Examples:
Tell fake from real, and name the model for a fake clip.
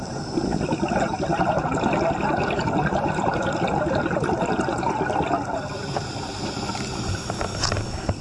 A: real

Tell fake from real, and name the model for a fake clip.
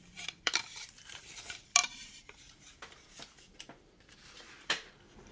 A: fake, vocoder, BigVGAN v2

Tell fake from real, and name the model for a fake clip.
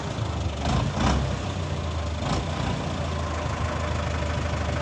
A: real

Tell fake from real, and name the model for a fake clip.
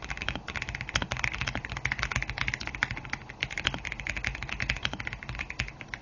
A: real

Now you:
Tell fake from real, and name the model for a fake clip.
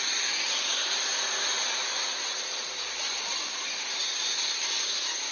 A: real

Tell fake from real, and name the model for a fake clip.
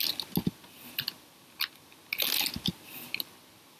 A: real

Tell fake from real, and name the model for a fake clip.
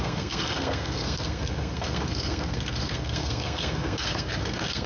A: fake, codec, SNAC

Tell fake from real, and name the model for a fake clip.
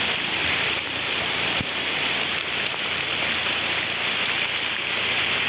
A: fake, vocoder, BigVGAN v2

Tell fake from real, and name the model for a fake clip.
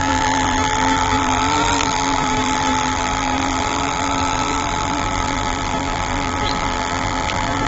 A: fake, vocoder, BigVGAN v2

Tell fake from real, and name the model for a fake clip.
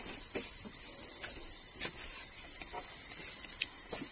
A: real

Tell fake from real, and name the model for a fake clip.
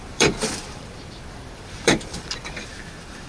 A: fake, vocoder, BigVGAN v2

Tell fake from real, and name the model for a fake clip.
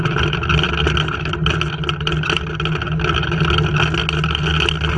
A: real